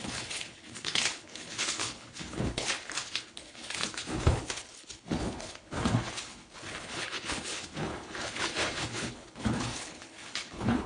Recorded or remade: remade